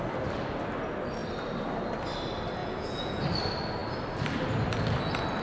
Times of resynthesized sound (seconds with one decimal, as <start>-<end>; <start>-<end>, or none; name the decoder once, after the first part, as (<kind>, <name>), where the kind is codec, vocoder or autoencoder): 2.6-3.2 (vocoder, Vocos)